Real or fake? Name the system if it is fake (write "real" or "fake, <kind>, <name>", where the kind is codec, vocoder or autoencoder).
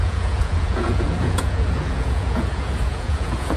fake, vocoder, Vocos